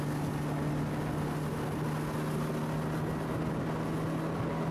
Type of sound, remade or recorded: recorded